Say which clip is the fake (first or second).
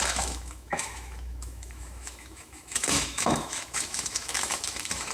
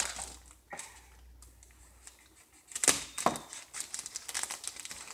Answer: first